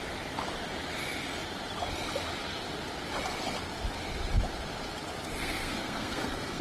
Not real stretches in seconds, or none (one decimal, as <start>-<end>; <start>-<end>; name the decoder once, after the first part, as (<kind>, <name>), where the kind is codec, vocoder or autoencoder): 5.4-6.6 (codec, SNAC)